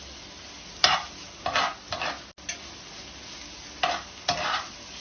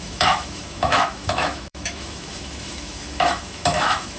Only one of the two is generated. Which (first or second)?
second